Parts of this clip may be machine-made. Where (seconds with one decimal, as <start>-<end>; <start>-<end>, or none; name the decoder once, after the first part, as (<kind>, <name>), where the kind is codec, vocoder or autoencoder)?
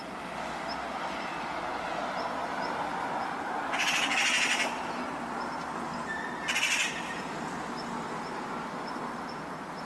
none